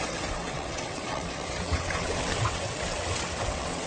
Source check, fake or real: fake